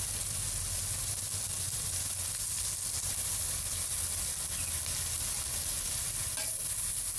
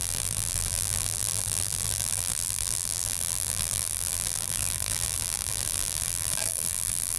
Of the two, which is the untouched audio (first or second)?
first